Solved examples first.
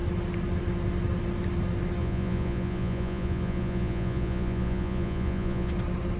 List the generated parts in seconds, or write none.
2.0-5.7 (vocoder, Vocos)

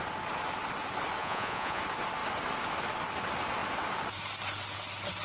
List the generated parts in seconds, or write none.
1.2-1.8 (vocoder, Vocos)